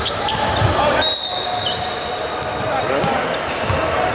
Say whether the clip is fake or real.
real